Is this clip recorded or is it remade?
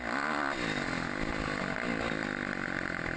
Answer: recorded